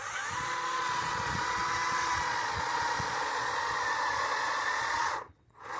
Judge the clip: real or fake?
fake